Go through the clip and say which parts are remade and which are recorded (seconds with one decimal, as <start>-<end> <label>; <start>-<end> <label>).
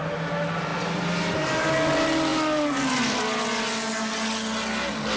0.0-0.7 recorded; 0.7-1.7 remade; 1.7-5.2 recorded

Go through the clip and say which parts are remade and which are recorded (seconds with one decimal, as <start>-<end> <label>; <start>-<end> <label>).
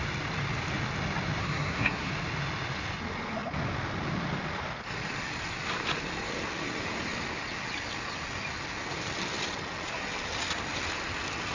0.0-1.4 recorded; 1.4-2.1 remade; 2.1-11.5 recorded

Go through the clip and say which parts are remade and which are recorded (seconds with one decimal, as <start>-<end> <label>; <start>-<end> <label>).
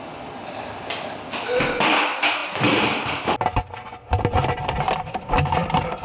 0.0-6.0 recorded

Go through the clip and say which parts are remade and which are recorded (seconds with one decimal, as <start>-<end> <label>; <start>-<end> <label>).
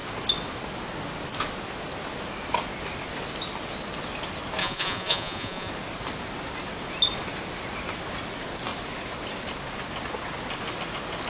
0.0-4.6 recorded; 4.6-5.7 remade; 5.7-11.3 recorded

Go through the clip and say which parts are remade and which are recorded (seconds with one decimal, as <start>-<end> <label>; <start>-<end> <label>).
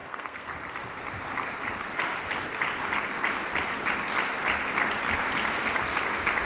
0.0-0.5 remade; 0.5-6.5 recorded